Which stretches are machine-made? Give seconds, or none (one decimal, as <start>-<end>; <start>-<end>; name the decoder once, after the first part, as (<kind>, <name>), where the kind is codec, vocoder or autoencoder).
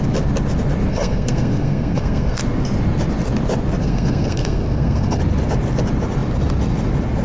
0.9-2.4 (codec, SNAC); 3.8-5.2